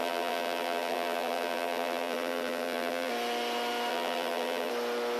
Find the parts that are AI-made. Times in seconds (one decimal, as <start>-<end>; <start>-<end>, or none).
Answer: 0.0-3.1; 3.9-4.7